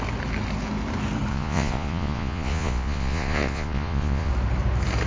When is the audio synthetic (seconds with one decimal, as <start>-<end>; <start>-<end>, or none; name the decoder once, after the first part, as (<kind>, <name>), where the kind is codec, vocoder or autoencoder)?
1.3-4.3 (vocoder, Vocos)